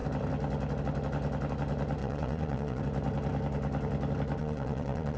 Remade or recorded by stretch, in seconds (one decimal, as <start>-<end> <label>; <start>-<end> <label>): 0.0-2.0 recorded; 2.0-2.8 remade; 2.8-4.4 recorded; 4.4-5.2 remade